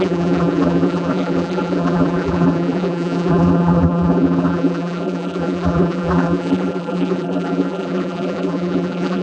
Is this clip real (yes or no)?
no